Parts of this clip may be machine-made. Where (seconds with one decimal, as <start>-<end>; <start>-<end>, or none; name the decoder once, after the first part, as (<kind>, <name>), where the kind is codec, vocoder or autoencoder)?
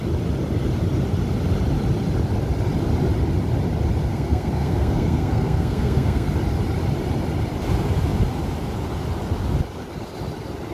4.0-6.3 (codec, SNAC)